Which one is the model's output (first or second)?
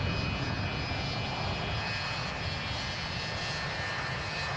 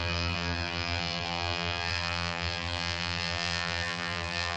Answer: second